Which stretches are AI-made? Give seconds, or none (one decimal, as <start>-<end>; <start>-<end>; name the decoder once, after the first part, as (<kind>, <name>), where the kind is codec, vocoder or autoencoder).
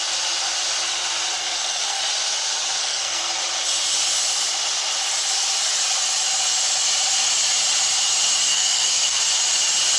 1.4-2.0 (codec, SNAC); 2.8-3.4; 8.5-9.2